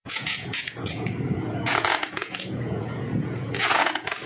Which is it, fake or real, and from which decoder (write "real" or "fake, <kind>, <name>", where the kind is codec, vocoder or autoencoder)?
fake, vocoder, Vocos